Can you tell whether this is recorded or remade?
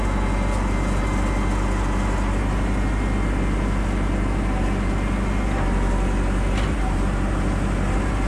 recorded